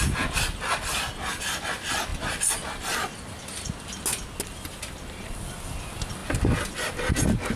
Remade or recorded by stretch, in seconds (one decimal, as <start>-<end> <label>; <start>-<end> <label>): 0.0-7.6 recorded